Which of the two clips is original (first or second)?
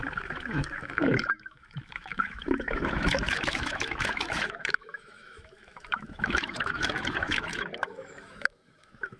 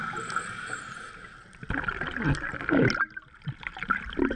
second